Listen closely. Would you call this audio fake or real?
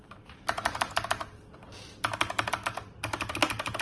real